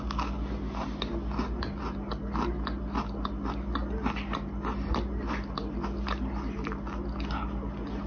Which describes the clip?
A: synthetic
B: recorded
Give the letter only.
B